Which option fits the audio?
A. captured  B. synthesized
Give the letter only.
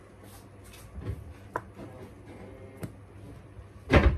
A